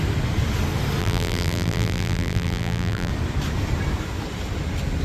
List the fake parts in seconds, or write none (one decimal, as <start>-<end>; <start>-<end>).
1.0-3.1